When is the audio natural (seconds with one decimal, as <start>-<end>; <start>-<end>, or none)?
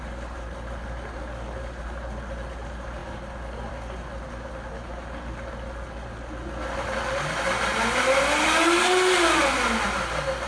0.0-10.5